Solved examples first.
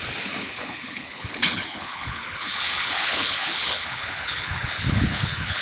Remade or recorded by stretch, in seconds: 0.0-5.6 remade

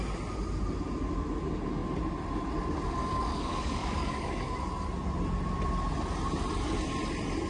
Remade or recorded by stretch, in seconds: 0.0-3.0 recorded; 3.0-4.6 remade; 4.6-7.5 recorded

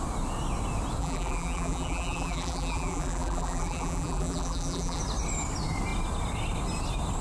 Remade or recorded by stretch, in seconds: 0.0-1.0 recorded; 1.0-5.0 remade; 5.0-7.2 recorded

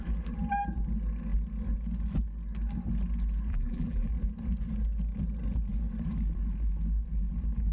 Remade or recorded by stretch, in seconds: 0.0-3.5 recorded; 3.5-4.1 remade; 4.1-7.7 recorded

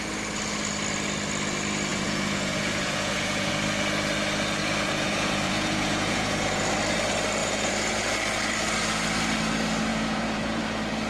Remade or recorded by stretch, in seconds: 0.0-1.9 recorded; 1.9-3.5 remade; 3.5-4.6 recorded; 4.6-6.6 remade; 6.6-7.4 recorded; 7.4-8.0 remade; 8.0-9.9 recorded; 9.9-10.6 remade; 10.6-11.1 recorded

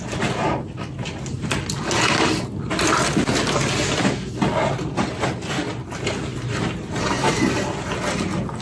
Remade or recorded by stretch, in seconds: 0.0-6.3 recorded; 6.3-7.3 remade; 7.3-8.6 recorded